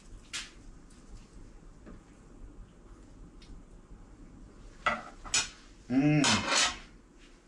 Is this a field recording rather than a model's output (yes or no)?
yes